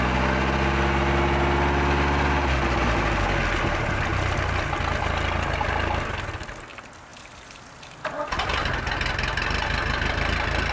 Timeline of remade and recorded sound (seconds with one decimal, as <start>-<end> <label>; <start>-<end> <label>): 0.0-10.7 recorded